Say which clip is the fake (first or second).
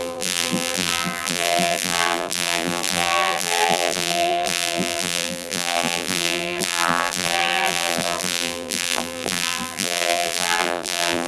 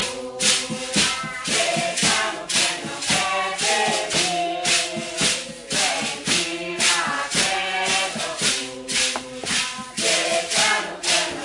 first